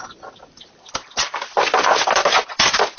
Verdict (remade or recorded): remade